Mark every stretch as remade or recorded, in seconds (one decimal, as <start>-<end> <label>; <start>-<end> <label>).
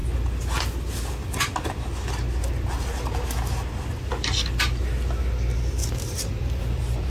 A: 0.0-5.8 recorded; 5.8-7.1 remade